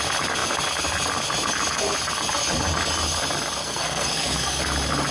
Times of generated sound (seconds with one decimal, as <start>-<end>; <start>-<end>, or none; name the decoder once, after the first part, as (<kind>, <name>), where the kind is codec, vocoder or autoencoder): 3.6-4.6 (codec, SNAC)